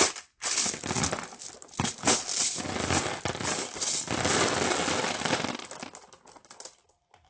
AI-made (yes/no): no